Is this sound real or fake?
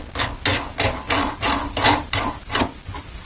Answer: real